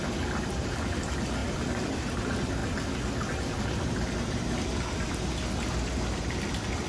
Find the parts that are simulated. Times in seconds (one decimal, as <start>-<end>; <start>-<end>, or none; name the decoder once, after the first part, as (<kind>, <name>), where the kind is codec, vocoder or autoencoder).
none